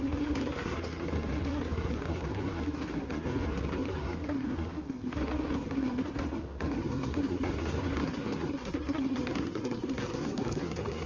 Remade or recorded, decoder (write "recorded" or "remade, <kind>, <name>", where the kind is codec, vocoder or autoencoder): remade, codec, SNAC